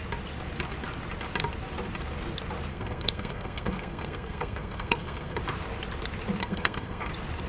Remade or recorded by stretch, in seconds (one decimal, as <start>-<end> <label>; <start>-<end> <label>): 0.0-2.7 recorded; 2.7-5.4 remade; 5.4-6.4 recorded; 6.4-7.1 remade; 7.1-7.5 recorded